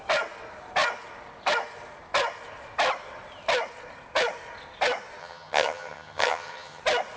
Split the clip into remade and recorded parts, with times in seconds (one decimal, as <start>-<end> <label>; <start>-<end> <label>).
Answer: 0.0-5.2 recorded; 5.2-6.8 remade; 6.8-7.2 recorded